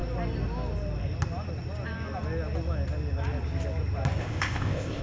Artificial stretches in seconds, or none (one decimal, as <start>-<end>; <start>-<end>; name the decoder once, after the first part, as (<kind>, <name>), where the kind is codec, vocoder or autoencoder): 4.2-5.0 (codec, ZipCodec)